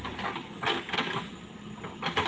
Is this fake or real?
real